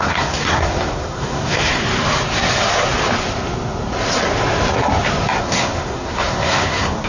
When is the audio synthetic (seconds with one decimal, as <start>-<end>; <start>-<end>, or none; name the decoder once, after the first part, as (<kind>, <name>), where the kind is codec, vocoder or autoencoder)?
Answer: 0.0-1.8 (codec, SNAC); 5.4-7.1